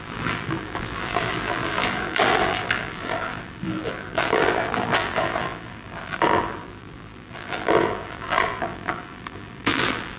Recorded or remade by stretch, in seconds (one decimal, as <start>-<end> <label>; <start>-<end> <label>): 0.0-10.2 remade